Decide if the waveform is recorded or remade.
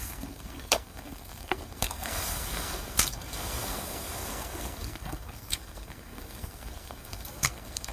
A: remade